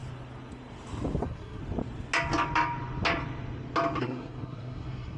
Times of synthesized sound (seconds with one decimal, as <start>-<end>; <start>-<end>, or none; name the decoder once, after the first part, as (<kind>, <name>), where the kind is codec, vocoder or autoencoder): 1.2-1.6 (codec, SNAC); 4.0-5.2